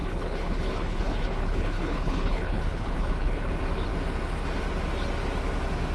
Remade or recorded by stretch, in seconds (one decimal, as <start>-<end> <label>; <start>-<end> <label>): 0.0-3.5 remade; 3.5-5.9 recorded